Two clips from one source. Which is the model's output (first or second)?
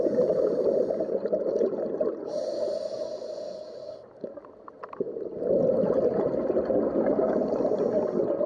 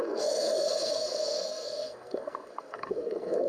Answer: second